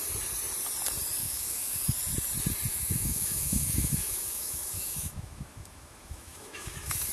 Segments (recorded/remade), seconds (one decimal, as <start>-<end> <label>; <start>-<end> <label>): 0.0-1.2 recorded; 1.2-1.8 remade; 1.8-2.7 recorded; 2.7-7.1 remade